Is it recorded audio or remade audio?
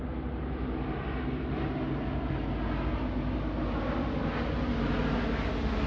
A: recorded